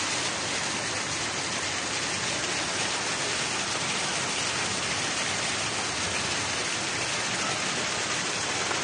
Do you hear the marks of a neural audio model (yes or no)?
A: no